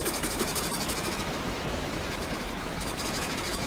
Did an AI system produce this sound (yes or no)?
yes